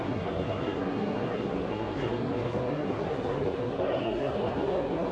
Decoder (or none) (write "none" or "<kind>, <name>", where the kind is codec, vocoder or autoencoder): codec, SNAC